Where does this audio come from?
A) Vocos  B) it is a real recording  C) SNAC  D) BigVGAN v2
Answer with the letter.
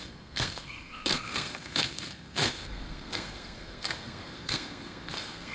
C